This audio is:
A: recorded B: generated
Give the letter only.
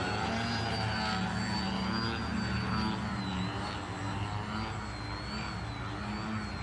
A